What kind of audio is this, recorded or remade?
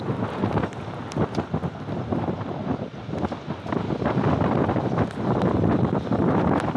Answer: recorded